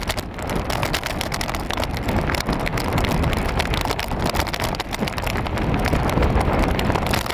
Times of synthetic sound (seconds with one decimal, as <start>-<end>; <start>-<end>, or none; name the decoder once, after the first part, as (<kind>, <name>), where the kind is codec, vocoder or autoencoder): none